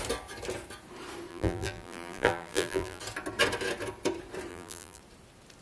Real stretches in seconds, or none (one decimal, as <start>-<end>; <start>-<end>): 0.0-1.3; 3.0-4.5; 5.0-5.6